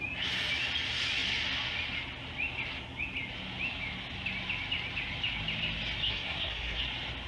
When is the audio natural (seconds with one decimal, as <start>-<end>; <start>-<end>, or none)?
0.0-6.1; 6.8-7.3